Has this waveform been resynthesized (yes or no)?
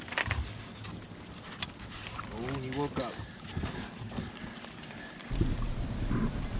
no